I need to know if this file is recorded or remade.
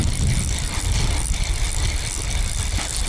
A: recorded